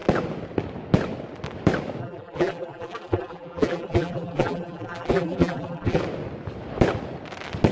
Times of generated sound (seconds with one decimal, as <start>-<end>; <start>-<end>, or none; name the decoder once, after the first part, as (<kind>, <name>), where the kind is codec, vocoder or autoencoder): 2.0-6.0 (vocoder, BigVGAN v2)